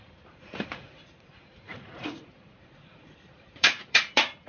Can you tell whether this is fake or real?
fake